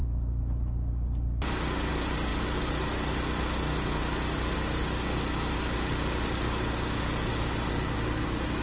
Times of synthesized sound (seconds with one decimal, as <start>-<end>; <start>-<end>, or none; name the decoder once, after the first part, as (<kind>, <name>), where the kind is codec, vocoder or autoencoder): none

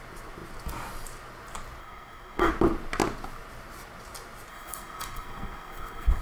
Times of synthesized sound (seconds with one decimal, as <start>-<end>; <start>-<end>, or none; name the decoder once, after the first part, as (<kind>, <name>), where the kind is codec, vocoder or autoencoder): 1.8-2.5 (codec, SNAC); 4.5-6.2

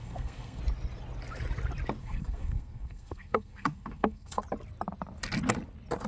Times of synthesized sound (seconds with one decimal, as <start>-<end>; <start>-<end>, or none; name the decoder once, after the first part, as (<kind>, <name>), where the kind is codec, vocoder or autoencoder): 0.0-0.6 (codec, SNAC); 2.0-4.4